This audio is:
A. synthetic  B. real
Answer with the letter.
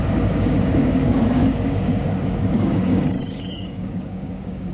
A